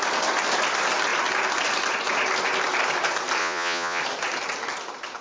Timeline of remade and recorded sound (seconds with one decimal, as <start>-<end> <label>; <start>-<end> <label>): 0.0-3.4 recorded; 3.4-4.0 remade; 4.0-5.2 recorded